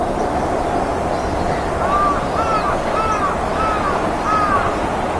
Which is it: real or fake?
real